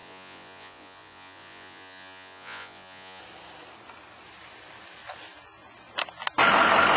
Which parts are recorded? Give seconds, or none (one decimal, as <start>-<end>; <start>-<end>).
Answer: 3.2-7.0